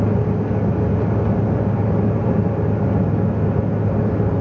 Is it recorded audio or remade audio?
recorded